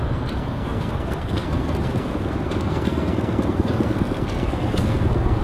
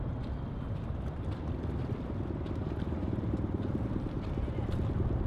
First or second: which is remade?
first